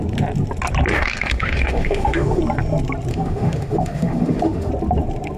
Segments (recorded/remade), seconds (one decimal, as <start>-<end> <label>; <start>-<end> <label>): 0.0-0.9 recorded; 0.9-2.4 remade; 2.4-3.1 recorded; 3.1-4.7 remade; 4.7-5.4 recorded